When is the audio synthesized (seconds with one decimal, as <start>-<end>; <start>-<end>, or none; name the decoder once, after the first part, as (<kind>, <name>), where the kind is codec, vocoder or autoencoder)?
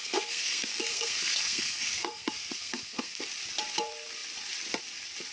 0.0-3.2 (codec, SNAC)